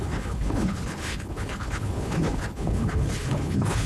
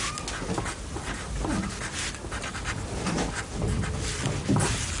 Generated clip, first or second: first